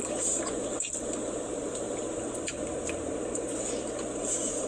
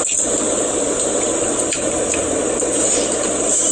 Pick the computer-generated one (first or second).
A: second